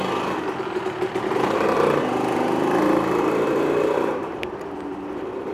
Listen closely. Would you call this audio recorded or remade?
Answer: remade